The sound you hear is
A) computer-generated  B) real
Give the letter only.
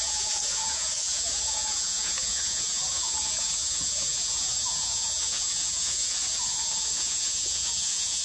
A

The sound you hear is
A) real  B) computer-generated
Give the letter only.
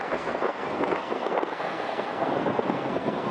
B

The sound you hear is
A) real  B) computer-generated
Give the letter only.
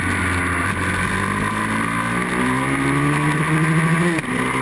A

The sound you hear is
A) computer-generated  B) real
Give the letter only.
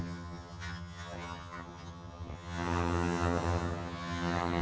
A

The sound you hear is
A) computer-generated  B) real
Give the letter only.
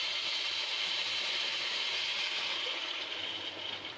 A